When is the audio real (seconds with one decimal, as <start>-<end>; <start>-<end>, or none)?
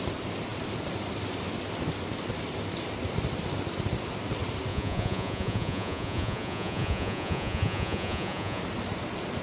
0.0-4.7; 8.6-9.4